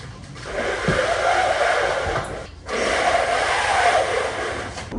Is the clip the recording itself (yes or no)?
yes